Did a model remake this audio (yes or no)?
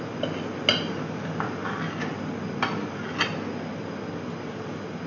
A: no